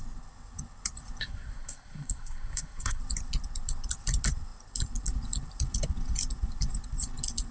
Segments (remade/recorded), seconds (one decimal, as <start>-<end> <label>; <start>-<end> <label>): 0.0-1.2 recorded; 1.2-3.0 remade; 3.0-7.5 recorded